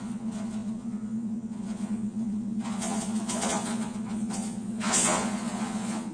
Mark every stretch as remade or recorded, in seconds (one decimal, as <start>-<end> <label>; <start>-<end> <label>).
0.0-6.1 remade